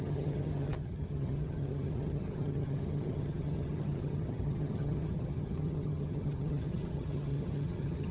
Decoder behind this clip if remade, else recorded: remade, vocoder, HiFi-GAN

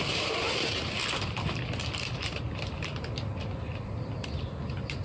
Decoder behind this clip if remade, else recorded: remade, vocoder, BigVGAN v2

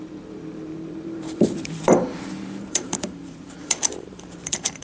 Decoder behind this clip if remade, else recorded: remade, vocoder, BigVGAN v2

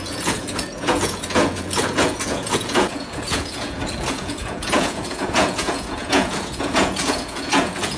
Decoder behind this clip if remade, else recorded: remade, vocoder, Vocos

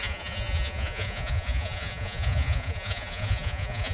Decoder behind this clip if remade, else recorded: remade, vocoder, Vocos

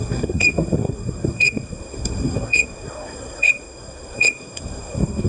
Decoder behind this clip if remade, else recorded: remade, codec, SNAC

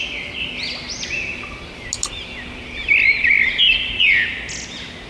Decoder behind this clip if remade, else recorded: recorded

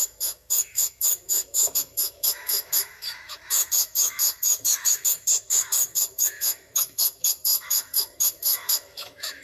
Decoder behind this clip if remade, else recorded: remade, autoencoder, DAC-VAE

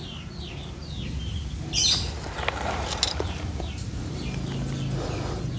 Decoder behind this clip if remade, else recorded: recorded